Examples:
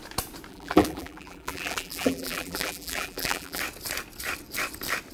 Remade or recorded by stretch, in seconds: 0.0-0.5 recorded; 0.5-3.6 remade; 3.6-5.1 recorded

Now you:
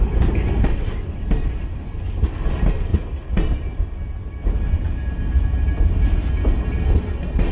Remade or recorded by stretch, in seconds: 0.0-7.5 recorded

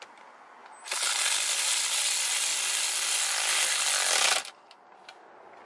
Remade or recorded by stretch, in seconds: 0.0-5.7 recorded

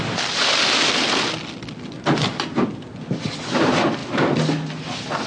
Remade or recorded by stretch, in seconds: 0.0-5.3 recorded